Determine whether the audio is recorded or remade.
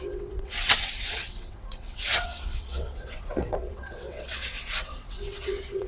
remade